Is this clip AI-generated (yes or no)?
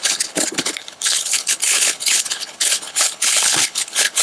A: yes